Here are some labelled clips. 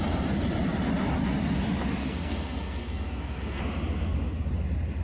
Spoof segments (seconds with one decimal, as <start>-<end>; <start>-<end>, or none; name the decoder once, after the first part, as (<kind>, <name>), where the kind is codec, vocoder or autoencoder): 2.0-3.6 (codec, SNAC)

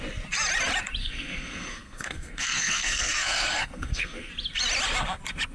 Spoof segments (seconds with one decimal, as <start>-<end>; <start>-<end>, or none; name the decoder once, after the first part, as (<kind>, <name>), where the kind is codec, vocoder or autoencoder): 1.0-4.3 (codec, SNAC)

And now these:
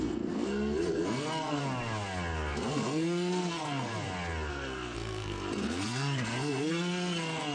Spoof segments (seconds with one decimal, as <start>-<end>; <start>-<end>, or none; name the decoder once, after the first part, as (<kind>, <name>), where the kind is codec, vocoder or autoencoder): 0.0-1.6 (codec, SNAC); 2.6-3.9; 4.5-7.5

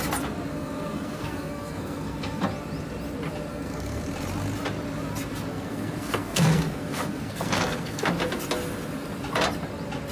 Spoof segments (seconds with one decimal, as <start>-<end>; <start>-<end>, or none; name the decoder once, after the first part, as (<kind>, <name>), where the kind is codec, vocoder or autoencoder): 0.5-2.4 (codec, SNAC); 3.5-4.0; 5.5-8.1

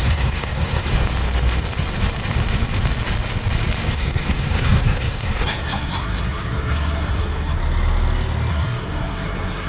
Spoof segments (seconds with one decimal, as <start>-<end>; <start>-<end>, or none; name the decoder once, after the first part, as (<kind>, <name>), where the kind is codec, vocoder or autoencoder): 0.0-0.9 (codec, SNAC); 3.9-7.6; 8.5-9.7

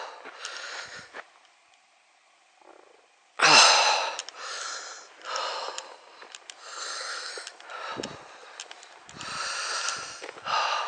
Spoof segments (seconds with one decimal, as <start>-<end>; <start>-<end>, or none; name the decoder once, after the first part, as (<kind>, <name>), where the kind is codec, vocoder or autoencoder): 6.6-7.3 (codec, SNAC)

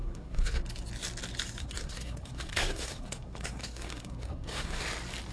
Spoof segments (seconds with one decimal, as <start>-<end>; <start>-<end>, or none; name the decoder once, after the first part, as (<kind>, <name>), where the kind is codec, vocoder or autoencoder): 0.0-0.6 (codec, SNAC); 1.6-4.8